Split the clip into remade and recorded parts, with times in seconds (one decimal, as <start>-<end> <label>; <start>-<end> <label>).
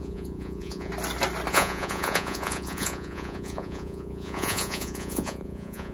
0.0-0.9 remade; 0.9-1.5 recorded; 1.5-5.9 remade